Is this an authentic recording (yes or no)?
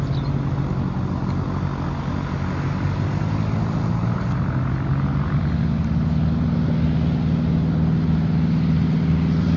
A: yes